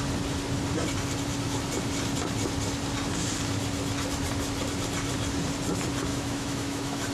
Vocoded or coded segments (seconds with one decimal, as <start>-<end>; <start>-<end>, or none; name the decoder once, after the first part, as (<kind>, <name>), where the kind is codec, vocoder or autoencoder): 6.1-7.1 (autoencoder, DAC-VAE)